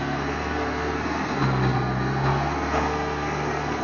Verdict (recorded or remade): remade